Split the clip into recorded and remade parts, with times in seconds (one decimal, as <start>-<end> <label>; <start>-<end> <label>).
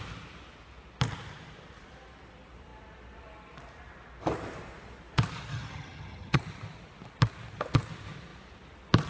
0.0-5.5 recorded; 5.5-6.4 remade; 6.4-9.1 recorded